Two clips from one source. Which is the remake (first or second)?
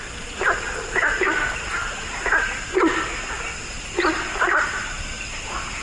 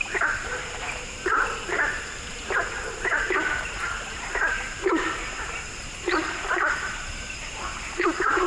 second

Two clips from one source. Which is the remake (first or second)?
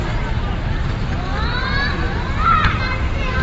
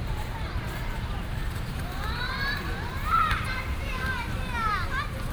second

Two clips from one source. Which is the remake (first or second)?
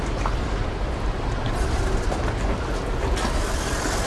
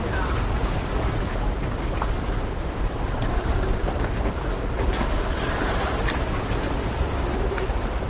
second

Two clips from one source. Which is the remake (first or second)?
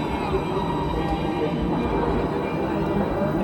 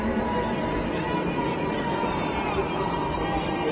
second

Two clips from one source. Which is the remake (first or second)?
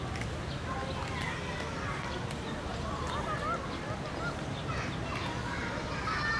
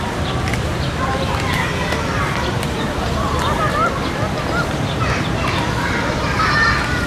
second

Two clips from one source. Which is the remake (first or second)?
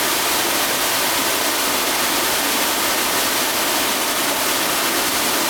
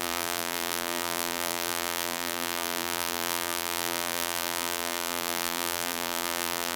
second